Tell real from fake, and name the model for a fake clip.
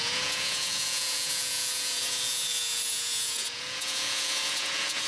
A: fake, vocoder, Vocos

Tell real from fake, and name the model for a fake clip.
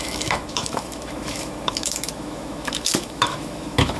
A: fake, autoencoder, DAC-VAE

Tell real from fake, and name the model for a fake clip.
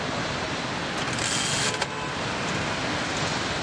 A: real